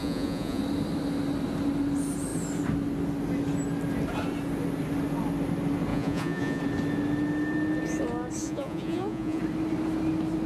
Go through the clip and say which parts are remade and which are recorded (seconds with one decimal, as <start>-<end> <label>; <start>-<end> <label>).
0.0-0.6 remade; 0.6-5.9 recorded; 5.9-6.6 remade; 6.6-8.4 recorded; 8.4-9.4 remade; 9.4-10.5 recorded